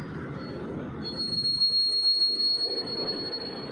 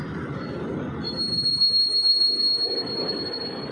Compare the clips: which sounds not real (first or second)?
second